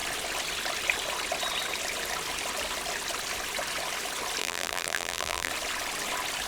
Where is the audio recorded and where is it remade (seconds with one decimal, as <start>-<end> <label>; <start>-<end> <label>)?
0.0-4.4 recorded; 4.4-5.5 remade; 5.5-6.5 recorded